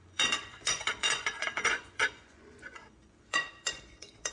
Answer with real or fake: fake